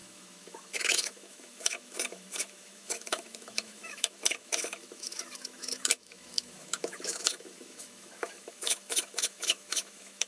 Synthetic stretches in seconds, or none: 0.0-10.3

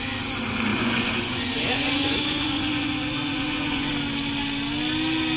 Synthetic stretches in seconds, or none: 0.7-3.9